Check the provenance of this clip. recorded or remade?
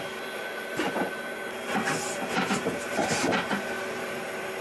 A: recorded